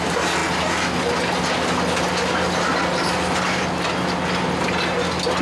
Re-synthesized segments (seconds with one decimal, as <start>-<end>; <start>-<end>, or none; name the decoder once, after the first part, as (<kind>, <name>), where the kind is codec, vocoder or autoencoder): none